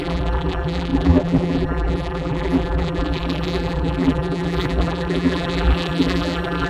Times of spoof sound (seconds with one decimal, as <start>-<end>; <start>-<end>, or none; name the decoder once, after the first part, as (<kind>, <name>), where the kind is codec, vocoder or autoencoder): 0.0-6.7 (vocoder, BigVGAN v2)